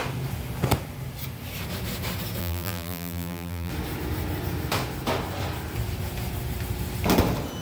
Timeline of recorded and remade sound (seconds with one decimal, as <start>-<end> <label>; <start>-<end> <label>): 0.0-2.4 recorded; 2.4-3.7 remade; 3.7-7.6 recorded